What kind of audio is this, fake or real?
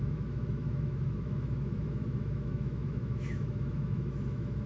fake